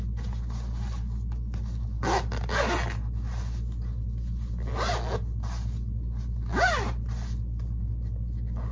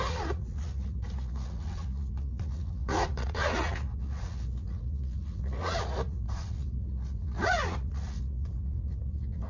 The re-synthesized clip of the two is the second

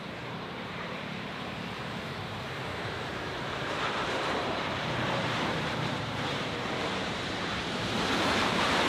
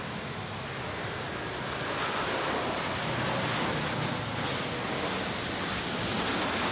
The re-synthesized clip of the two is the first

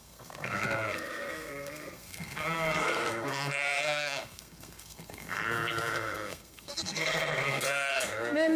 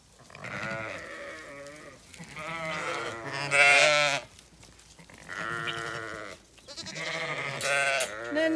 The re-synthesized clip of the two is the first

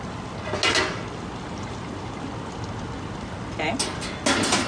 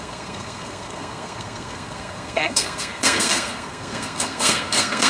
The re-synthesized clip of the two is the second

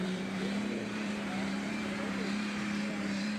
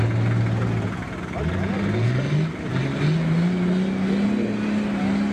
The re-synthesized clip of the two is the first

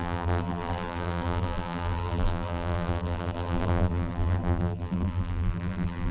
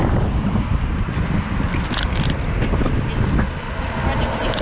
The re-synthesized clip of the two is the first